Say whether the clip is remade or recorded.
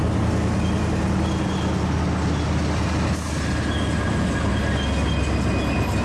recorded